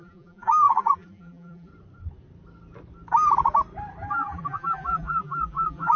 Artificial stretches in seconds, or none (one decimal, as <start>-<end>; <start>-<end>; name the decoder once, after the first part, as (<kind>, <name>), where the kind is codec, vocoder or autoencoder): 0.0-1.7 (vocoder, BigVGAN v2); 4.1-6.0